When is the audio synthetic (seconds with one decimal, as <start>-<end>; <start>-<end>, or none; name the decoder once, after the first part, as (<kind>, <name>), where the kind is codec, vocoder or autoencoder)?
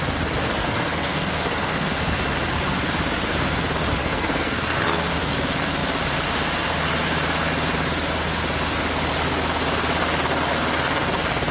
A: 0.6-1.9 (codec, SNAC); 4.0-5.3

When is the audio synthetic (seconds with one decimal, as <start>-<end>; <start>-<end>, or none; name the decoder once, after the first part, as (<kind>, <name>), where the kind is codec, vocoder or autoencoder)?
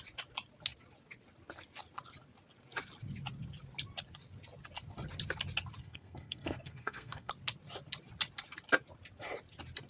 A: 5.8-7.3 (codec, SNAC)